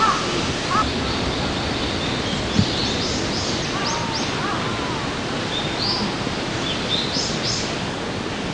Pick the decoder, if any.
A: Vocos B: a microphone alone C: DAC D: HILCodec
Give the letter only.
B